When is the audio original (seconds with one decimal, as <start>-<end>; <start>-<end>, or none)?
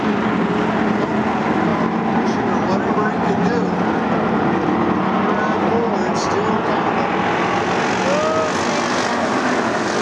0.0-10.0